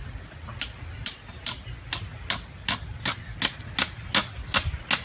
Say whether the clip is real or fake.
real